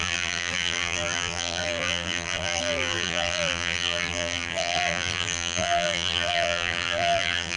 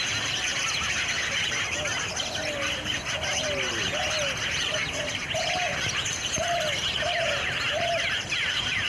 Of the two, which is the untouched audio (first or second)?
second